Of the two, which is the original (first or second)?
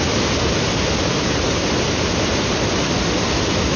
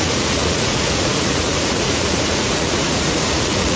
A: first